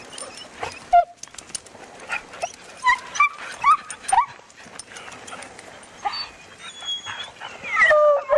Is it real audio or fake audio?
real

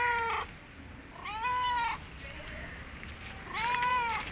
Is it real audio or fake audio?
fake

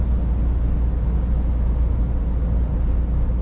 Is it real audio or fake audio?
real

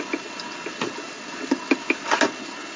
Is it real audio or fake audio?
real